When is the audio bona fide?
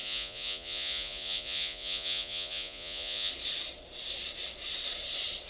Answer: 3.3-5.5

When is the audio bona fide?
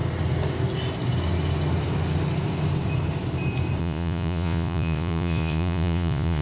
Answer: 0.0-3.8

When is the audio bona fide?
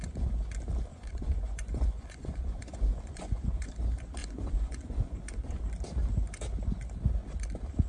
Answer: 0.0-0.9; 3.7-4.2; 5.6-7.9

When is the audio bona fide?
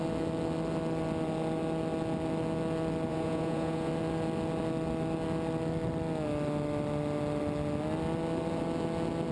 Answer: 0.0-3.1; 3.9-9.3